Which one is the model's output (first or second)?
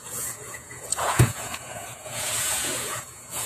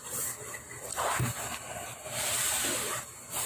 first